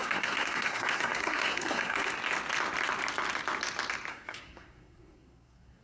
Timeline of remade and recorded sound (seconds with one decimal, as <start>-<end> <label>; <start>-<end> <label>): 0.0-2.1 remade; 2.1-4.1 recorded; 4.1-5.8 remade